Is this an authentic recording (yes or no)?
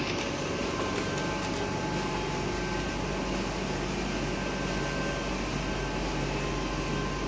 yes